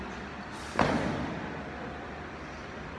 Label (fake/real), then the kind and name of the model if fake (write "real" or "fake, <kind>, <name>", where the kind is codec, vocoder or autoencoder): real